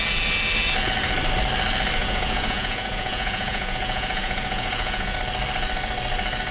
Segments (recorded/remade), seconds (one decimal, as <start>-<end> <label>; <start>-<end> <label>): 0.0-2.0 recorded; 2.0-5.2 remade; 5.2-6.5 recorded